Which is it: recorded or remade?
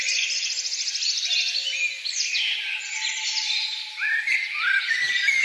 recorded